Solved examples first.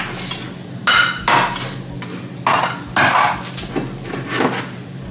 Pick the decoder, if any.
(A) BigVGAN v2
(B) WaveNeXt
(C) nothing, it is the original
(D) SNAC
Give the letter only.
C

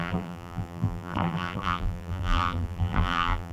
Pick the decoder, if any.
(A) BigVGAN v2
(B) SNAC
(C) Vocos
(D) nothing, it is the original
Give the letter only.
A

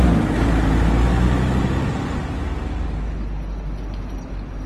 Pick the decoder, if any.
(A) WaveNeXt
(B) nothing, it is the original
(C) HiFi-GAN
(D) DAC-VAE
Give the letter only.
B